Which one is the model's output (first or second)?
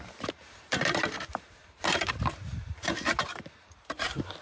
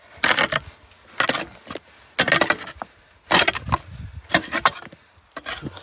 first